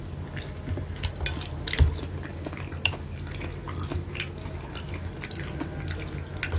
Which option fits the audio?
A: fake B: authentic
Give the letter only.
B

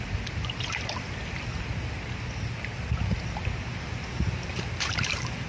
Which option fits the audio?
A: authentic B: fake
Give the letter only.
B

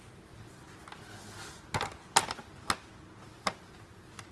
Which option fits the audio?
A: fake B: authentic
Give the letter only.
B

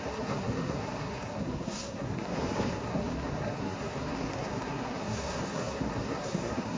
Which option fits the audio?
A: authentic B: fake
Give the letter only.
B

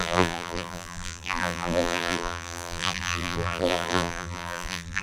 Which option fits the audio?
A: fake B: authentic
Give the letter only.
A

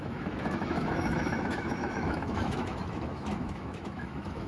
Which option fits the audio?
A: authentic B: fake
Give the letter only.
B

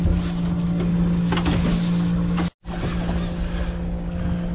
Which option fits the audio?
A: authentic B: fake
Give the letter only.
A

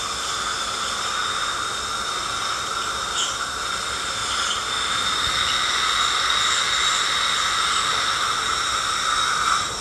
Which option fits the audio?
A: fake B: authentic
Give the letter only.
B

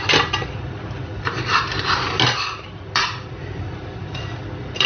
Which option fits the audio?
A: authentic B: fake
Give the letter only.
A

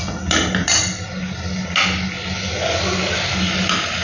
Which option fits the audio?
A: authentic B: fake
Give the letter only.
A